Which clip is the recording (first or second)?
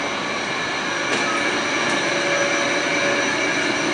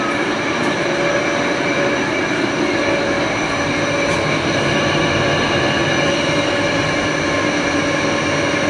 first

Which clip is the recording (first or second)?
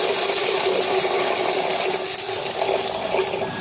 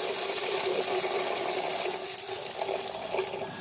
first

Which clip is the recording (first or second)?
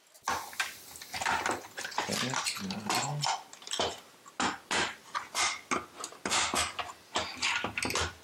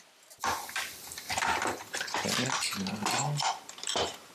first